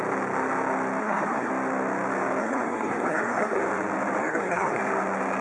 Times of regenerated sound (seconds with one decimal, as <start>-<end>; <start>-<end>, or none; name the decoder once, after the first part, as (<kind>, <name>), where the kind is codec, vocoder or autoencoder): 1.0-1.5 (codec, SNAC); 2.4-3.6; 4.2-4.8